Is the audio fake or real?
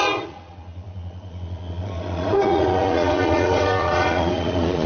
fake